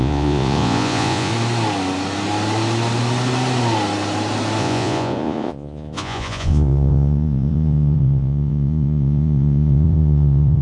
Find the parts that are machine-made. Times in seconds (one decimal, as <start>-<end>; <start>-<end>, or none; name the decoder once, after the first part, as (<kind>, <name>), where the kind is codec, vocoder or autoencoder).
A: 0.0-1.3 (vocoder, Vocos); 4.6-10.6